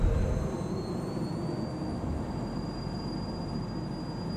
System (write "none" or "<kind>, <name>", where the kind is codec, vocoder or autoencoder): none